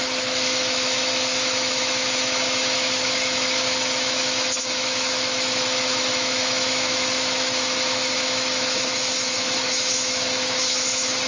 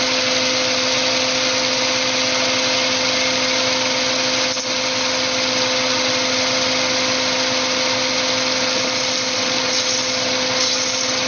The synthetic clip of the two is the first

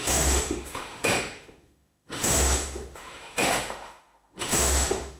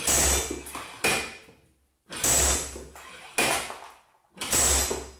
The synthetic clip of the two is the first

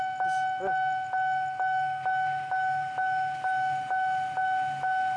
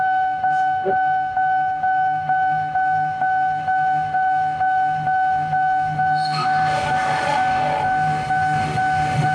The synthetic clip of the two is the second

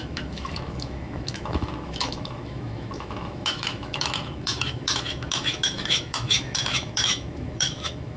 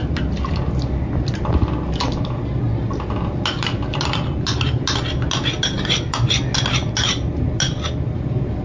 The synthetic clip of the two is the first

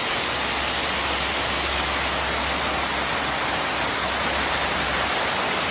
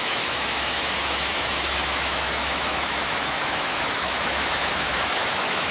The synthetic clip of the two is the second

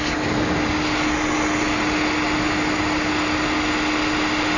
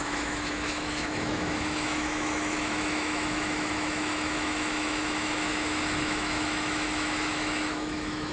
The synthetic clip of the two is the second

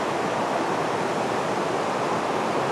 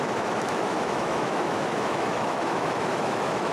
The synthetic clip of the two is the second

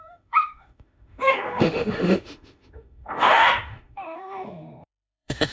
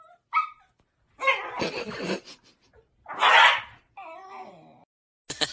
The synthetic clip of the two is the first